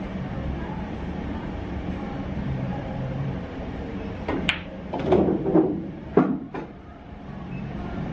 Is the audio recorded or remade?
remade